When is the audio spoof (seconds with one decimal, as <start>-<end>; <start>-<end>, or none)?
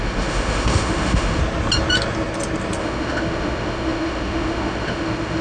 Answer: 0.0-1.4; 2.8-5.4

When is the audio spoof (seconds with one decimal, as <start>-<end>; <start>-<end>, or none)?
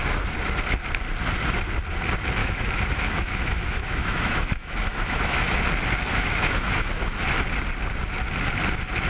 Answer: 2.4-5.6; 6.1-6.9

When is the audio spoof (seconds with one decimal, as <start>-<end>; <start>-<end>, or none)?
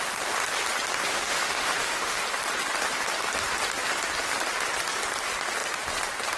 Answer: 1.1-2.2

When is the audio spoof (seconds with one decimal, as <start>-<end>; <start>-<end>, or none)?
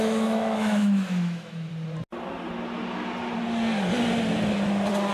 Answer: 0.0-1.7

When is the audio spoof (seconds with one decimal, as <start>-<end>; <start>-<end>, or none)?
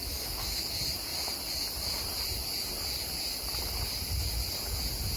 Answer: 0.0-0.7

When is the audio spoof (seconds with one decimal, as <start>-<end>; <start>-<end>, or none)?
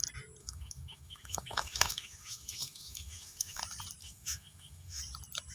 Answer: 0.4-3.6; 4.0-5.0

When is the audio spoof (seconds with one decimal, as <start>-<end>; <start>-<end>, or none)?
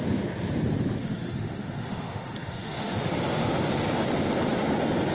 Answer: 1.0-3.1